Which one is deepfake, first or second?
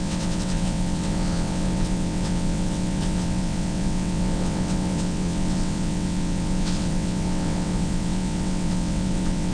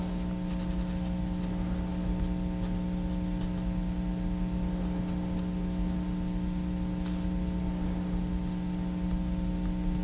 first